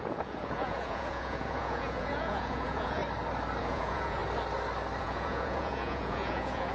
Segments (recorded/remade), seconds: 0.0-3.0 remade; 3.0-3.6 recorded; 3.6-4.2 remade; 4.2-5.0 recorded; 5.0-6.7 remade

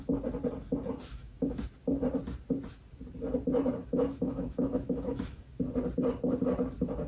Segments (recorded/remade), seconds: 0.0-1.1 recorded; 1.1-1.6 remade; 1.6-3.8 recorded; 3.8-5.6 remade; 5.6-7.1 recorded

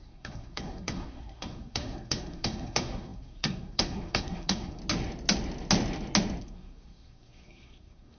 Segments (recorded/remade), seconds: 0.0-4.8 remade; 4.8-6.4 recorded; 6.4-8.2 remade

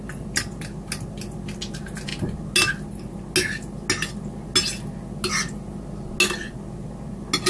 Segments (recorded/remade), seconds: 0.0-7.5 recorded

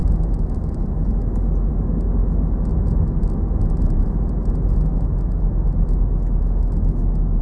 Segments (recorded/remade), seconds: 0.0-7.4 recorded